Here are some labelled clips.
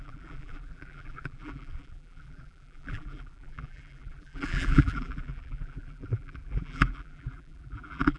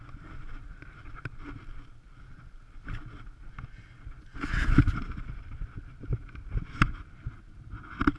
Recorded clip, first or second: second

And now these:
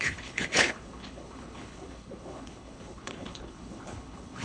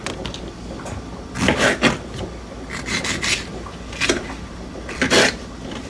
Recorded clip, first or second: second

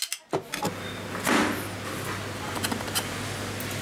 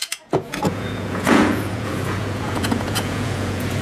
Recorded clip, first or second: first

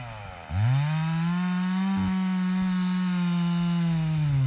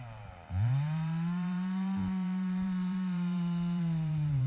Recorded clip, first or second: first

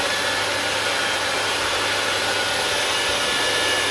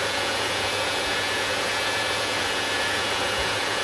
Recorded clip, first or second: first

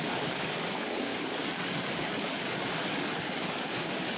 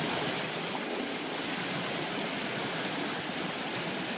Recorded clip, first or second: second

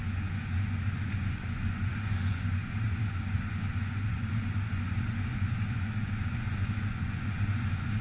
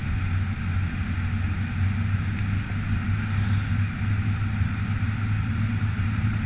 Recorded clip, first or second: second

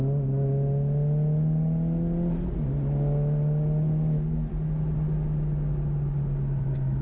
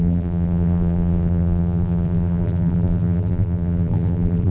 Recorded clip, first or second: first